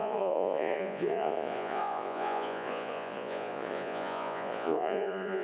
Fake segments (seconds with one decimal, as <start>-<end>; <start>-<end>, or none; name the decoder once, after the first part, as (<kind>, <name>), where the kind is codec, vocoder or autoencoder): 0.0-5.4 (vocoder, Vocos)